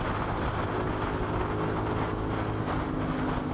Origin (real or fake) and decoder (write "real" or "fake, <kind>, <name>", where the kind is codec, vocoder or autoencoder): real